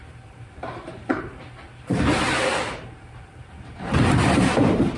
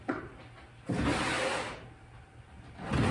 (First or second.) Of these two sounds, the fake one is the first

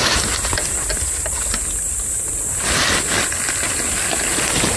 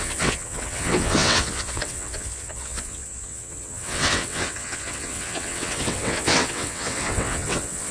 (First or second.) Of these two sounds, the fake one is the second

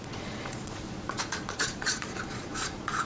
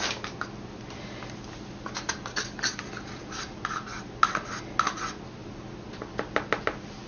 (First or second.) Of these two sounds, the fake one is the first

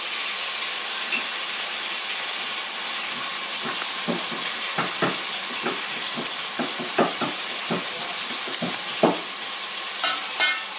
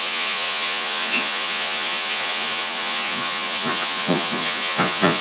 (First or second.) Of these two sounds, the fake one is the second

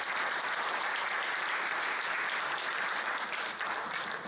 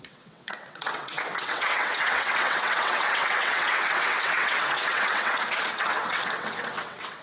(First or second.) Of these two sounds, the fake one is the second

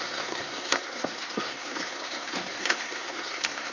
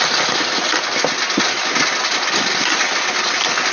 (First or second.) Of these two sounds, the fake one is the first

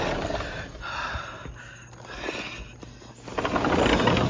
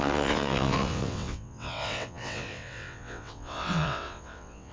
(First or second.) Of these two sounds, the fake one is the second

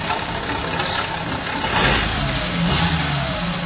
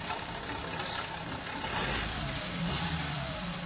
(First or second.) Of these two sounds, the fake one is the second